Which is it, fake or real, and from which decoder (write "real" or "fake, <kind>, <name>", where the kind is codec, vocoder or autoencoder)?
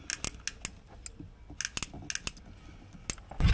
real